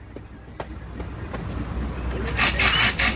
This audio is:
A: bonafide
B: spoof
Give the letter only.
A